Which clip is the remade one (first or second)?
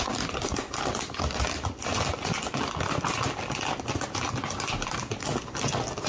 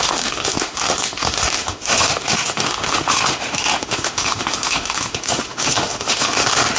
second